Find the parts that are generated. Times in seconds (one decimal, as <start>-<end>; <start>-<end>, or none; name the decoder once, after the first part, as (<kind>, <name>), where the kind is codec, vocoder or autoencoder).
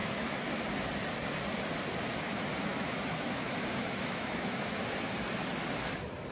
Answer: 0.0-0.5 (autoencoder, DAC-VAE); 2.7-4.7